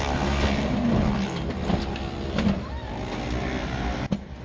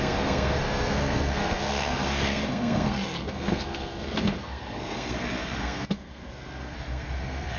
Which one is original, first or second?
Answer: first